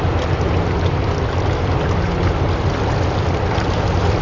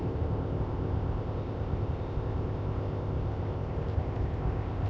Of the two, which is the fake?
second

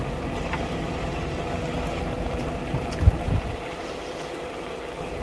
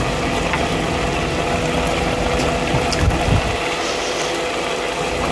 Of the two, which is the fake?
first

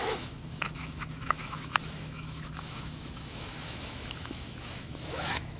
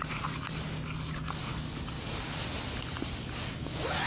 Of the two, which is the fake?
first